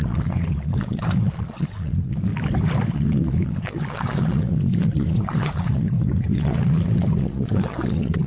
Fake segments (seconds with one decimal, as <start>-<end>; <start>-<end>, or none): 0.0-2.3; 2.9-8.3